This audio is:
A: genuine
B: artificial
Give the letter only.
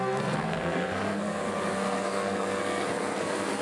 B